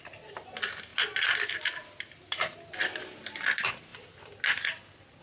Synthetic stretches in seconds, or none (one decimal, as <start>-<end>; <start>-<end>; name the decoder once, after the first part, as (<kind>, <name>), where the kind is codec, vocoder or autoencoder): none